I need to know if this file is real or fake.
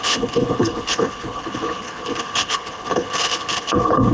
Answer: fake